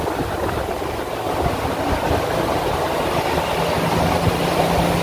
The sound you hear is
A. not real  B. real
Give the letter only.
B